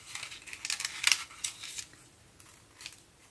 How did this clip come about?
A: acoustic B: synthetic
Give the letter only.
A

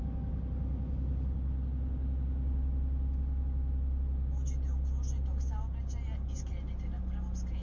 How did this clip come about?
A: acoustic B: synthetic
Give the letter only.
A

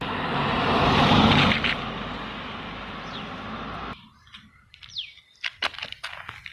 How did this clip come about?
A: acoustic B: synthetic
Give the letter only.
A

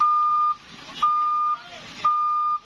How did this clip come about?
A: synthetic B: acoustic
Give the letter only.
B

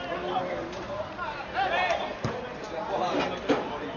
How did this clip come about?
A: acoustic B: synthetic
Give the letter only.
A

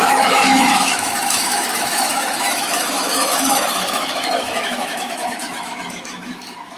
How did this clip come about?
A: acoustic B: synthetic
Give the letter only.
B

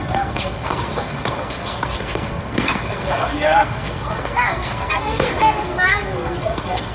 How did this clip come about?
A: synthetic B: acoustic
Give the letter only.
A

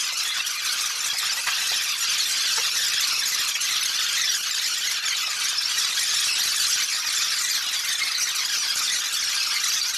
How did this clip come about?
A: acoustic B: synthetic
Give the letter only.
A